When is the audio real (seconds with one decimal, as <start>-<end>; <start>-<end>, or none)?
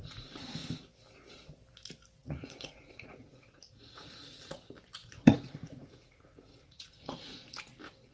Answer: 0.0-2.2; 4.5-5.0; 7.5-8.1